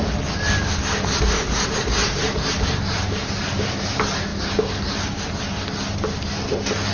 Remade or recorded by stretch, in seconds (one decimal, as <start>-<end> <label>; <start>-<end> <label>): 0.0-2.0 recorded; 2.0-3.9 remade; 3.9-4.3 recorded; 4.3-5.4 remade; 5.4-6.9 recorded

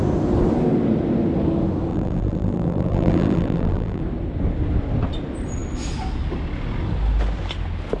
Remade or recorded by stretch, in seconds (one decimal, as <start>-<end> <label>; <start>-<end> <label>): 0.0-1.9 recorded; 1.9-4.0 remade; 4.0-8.0 recorded

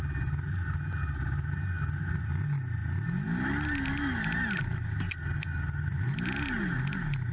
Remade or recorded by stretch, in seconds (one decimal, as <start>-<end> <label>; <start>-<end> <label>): 0.0-7.3 recorded

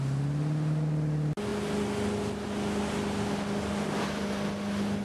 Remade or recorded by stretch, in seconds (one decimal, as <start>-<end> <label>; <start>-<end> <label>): 0.0-5.0 recorded

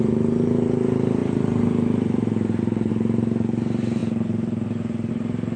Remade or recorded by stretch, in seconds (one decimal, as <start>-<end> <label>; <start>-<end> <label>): 0.0-5.6 recorded

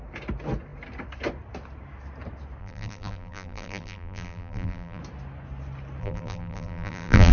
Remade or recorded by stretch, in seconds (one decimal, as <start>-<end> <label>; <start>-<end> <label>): 0.0-2.6 recorded; 2.6-5.0 remade; 5.0-6.0 recorded; 6.0-7.3 remade

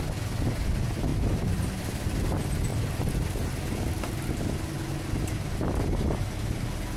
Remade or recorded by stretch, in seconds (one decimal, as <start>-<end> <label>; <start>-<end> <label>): 0.0-7.0 recorded